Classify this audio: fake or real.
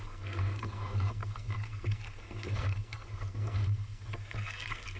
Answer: fake